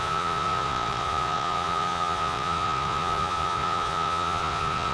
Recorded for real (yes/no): no